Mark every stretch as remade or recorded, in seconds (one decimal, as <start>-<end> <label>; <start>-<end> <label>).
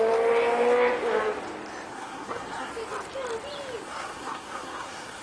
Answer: 0.0-1.9 recorded; 1.9-2.7 remade; 2.7-3.8 recorded; 3.8-5.2 remade